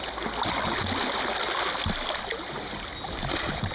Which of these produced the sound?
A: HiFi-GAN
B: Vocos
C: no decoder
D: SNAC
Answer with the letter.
C